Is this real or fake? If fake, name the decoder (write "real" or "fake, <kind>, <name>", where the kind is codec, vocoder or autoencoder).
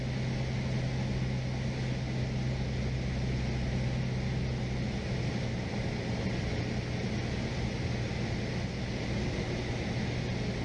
real